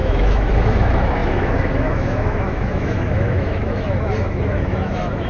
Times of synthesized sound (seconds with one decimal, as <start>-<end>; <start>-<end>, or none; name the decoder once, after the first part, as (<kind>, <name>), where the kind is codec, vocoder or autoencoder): 0.0-5.3 (autoencoder, DAC-VAE)